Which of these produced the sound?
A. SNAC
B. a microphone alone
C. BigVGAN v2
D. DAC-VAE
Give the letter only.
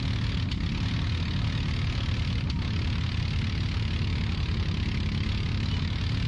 B